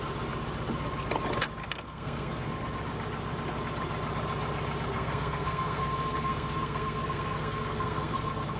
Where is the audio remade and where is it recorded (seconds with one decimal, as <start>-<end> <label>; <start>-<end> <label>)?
0.0-1.6 recorded; 1.6-2.5 remade; 2.5-4.9 recorded; 4.9-8.6 remade